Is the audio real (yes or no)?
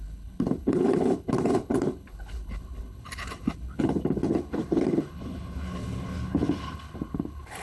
no